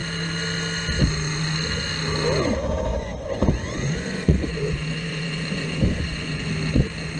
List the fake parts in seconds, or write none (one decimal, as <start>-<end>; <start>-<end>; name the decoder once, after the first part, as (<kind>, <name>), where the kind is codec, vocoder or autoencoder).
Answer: 2.9-6.5 (vocoder, Vocos)